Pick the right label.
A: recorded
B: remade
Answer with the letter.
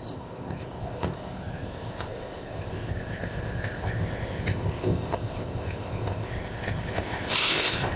B